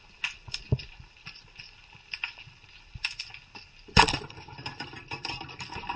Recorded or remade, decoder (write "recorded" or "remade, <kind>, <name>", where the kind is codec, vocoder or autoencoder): recorded